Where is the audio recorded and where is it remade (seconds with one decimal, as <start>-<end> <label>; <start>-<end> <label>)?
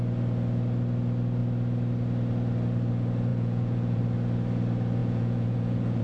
0.0-3.3 recorded; 3.3-4.0 remade; 4.0-5.0 recorded; 5.0-6.0 remade